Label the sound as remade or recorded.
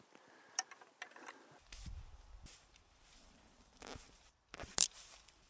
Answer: recorded